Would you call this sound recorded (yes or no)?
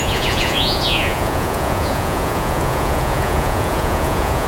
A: no